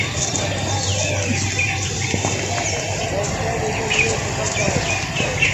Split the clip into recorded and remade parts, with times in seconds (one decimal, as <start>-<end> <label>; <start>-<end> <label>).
0.0-5.5 recorded